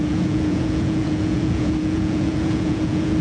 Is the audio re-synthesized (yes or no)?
yes